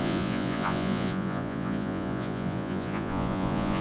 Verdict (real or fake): fake